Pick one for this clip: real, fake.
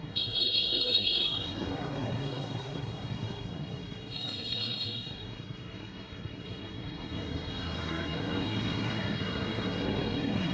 fake